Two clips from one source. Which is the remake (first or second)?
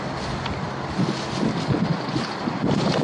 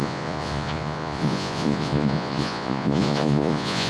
second